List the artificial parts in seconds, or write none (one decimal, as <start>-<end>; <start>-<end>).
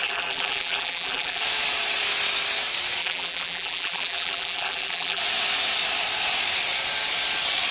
0.0-1.4; 3.0-5.2